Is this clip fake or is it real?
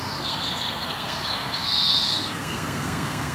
fake